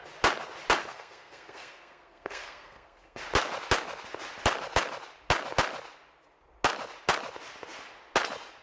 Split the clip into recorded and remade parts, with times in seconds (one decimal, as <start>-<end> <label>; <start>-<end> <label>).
0.0-0.8 recorded; 0.8-3.2 remade; 3.2-8.6 recorded